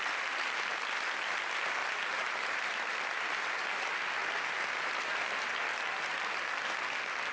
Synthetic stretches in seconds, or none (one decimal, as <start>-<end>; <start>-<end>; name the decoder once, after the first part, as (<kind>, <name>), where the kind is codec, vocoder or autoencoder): none